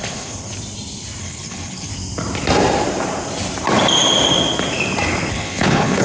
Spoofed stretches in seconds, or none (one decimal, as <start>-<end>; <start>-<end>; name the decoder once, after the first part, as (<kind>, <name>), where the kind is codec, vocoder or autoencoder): 0.0-0.5 (codec, HILCodec); 1.2-1.9; 5.3-6.0